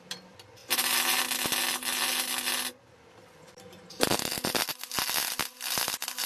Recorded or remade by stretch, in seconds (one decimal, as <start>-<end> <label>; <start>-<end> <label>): 0.0-4.7 remade; 4.7-5.5 recorded; 5.5-6.3 remade